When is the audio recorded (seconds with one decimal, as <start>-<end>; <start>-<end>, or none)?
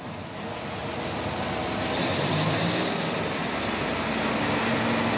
0.0-0.8; 3.9-5.2